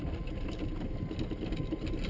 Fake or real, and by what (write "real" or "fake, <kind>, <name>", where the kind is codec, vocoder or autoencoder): real